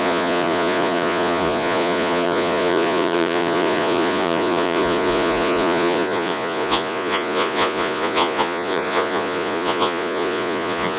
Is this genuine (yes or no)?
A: no